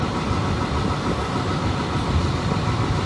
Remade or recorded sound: recorded